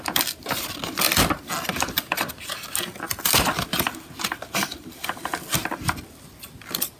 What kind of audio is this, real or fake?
real